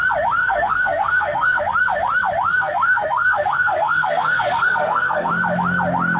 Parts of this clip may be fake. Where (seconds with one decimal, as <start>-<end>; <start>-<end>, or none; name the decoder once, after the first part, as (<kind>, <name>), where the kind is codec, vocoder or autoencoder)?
0.4-1.6 (codec, SNAC); 2.5-5.3